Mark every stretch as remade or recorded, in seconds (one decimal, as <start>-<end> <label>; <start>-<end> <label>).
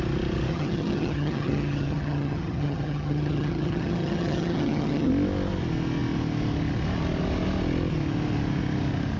0.0-0.5 recorded; 0.5-5.1 remade; 5.1-9.2 recorded